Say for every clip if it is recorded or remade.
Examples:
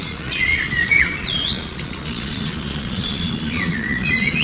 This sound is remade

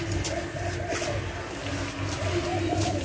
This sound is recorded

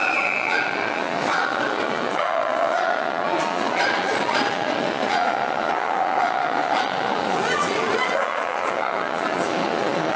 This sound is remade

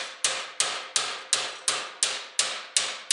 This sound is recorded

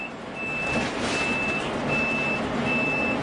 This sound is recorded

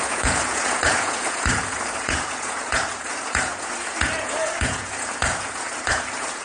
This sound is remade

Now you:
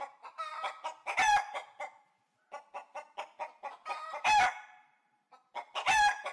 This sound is recorded